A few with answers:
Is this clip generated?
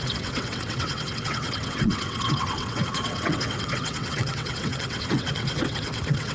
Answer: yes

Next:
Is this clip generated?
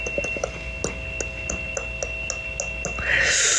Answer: no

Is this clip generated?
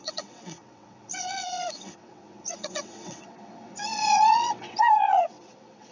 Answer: yes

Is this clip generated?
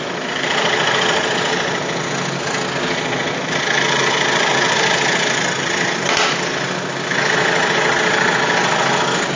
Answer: no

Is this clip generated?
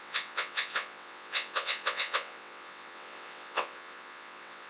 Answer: yes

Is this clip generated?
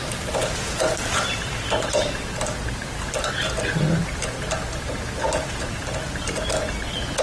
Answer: no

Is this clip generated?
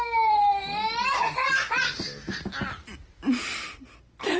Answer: no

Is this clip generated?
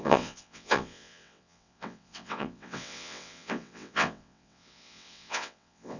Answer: yes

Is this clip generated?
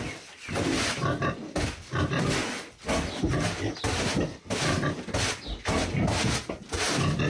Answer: no